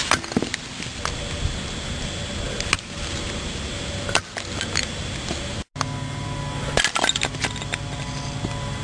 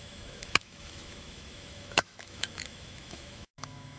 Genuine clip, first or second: first